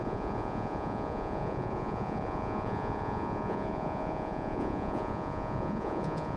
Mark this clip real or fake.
fake